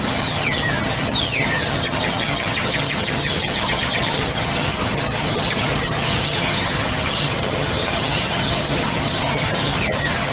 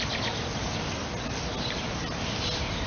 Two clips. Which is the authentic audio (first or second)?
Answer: second